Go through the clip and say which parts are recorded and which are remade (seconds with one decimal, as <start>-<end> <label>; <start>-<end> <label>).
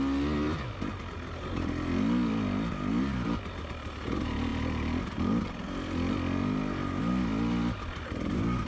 0.0-8.7 recorded